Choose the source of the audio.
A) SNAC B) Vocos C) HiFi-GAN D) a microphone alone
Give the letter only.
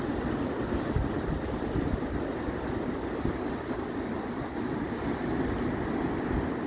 D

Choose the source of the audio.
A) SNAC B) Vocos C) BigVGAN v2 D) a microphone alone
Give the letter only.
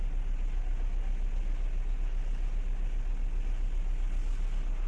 D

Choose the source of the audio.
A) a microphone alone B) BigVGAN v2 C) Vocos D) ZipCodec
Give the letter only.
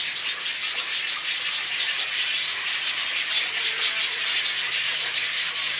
A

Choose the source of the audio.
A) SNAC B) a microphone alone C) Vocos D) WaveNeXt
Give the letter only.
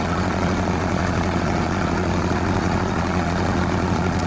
C